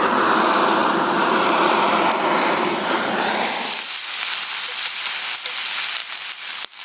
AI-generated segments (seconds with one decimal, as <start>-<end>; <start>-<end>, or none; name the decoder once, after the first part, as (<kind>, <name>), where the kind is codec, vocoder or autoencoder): 0.8-4.9 (vocoder, BigVGAN v2); 6.0-6.8